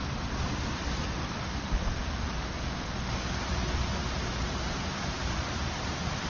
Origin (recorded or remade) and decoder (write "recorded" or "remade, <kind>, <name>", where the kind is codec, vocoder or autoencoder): recorded